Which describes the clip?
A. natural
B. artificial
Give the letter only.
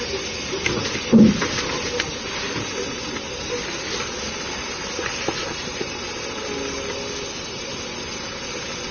A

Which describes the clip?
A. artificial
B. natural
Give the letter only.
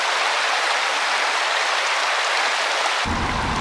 B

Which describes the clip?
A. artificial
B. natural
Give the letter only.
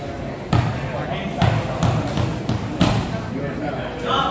B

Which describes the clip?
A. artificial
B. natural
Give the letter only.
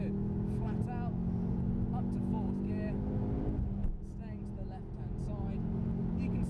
B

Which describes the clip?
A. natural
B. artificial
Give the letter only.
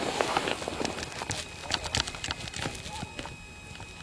A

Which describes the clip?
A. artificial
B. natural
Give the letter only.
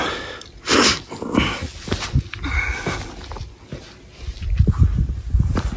B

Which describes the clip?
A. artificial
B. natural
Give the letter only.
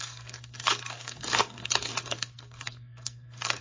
A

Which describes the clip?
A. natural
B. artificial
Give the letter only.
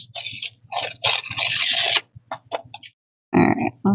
A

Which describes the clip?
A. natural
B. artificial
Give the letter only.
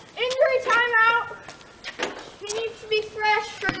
A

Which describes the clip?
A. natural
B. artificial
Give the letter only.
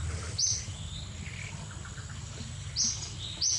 A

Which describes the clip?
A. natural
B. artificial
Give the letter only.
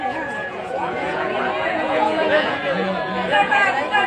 B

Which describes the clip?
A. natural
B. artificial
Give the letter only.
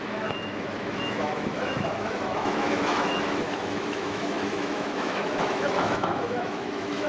B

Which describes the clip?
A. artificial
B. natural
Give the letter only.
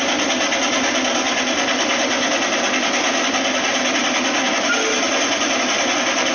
B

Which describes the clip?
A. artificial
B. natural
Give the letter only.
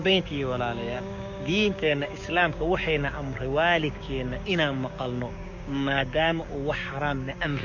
A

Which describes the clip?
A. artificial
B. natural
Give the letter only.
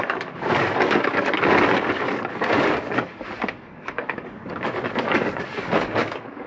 A